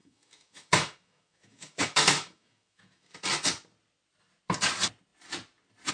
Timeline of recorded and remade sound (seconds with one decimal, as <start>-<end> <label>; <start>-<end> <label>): 0.0-3.1 remade; 3.1-5.9 recorded